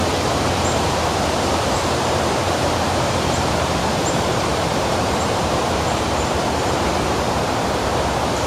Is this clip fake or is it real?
fake